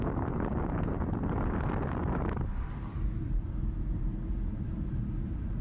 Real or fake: real